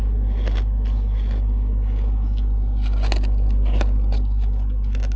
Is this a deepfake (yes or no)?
no